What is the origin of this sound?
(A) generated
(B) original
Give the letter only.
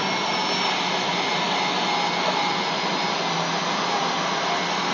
B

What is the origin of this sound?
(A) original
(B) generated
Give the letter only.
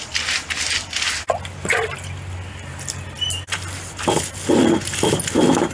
A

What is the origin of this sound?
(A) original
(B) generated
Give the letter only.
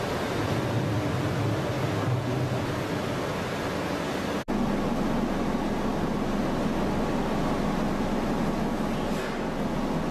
A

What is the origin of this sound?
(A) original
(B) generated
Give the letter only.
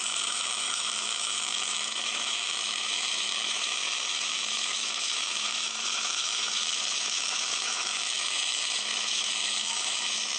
B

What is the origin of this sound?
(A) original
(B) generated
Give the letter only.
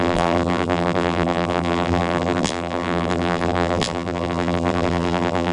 B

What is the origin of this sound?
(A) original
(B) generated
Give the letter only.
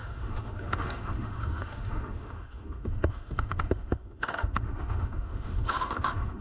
B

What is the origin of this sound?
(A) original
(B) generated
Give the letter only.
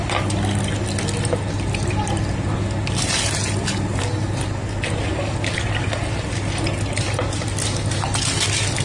A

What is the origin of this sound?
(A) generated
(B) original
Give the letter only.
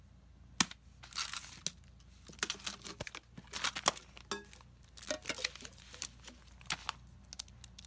B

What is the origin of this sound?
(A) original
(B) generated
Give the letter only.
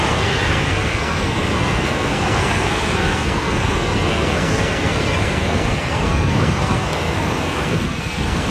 B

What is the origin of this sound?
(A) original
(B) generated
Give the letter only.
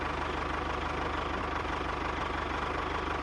A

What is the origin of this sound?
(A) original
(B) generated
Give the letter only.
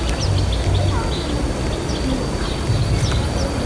A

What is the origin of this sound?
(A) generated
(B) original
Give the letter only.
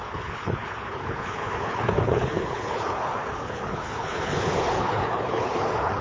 A